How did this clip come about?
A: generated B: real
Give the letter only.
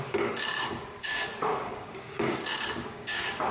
A